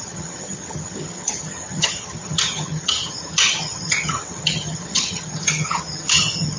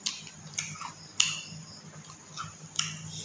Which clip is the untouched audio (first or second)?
second